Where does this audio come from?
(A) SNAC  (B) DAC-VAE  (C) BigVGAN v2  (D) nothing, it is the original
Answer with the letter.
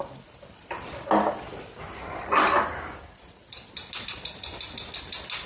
D